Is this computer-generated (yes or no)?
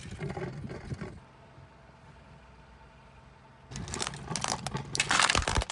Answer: no